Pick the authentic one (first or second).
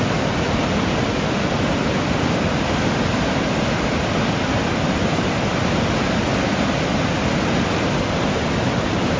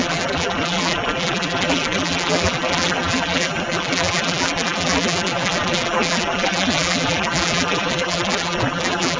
first